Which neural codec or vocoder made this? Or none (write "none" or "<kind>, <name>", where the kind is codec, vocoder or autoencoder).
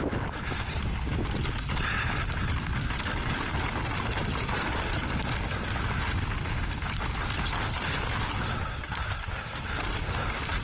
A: none